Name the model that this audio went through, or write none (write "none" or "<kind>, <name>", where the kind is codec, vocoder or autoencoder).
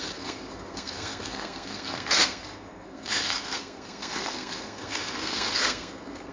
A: codec, SNAC